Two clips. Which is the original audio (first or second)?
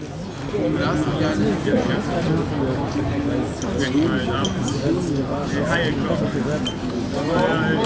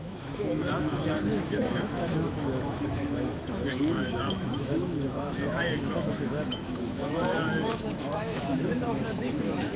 first